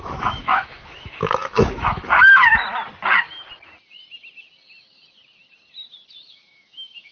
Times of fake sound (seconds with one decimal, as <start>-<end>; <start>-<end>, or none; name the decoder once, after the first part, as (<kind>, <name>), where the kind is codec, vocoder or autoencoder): 0.0-2.0 (autoencoder, DAC-VAE); 6.3-7.1